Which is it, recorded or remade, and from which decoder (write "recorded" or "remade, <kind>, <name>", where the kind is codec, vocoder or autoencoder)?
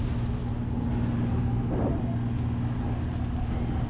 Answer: recorded